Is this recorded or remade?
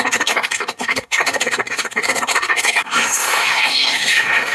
remade